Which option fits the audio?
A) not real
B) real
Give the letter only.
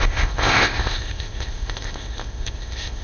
A